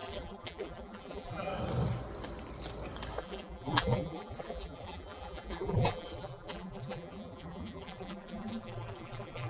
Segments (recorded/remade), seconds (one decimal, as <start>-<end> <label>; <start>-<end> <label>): 0.0-1.5 remade; 1.5-3.2 recorded; 3.2-9.5 remade